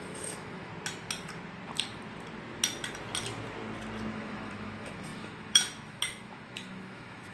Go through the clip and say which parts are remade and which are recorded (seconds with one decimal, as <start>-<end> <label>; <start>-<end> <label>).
0.0-0.7 remade; 0.7-4.1 recorded; 4.1-7.3 remade